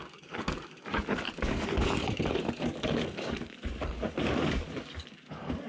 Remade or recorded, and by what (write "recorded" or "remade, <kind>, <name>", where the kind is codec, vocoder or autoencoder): remade, codec, DAC